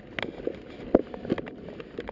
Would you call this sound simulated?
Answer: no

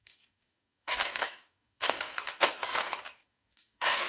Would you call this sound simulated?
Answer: yes